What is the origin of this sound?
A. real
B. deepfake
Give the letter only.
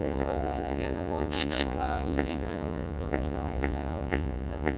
B